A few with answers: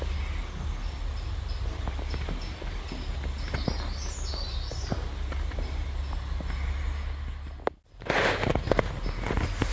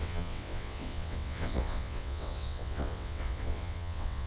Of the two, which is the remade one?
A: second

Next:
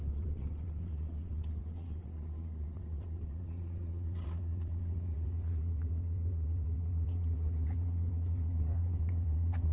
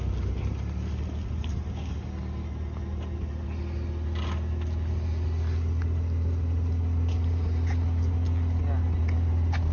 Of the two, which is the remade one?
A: first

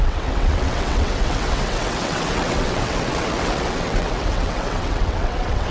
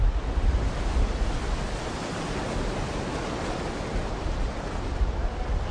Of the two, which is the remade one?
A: first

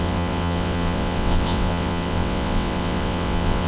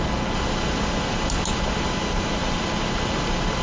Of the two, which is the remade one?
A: first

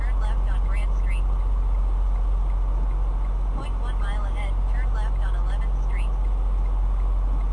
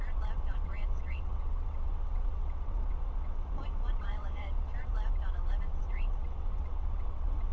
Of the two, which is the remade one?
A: second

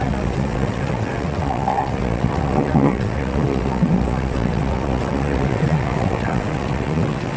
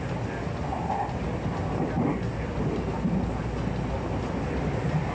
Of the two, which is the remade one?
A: first